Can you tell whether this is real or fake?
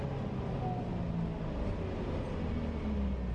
real